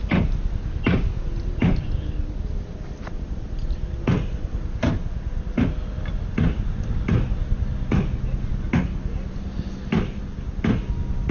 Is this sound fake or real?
real